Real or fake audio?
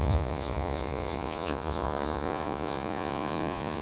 fake